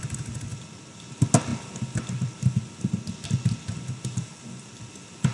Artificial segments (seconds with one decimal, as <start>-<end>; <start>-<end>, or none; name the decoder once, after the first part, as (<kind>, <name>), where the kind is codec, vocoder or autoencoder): none